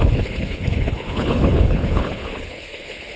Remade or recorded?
remade